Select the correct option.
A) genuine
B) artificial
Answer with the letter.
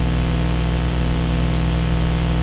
A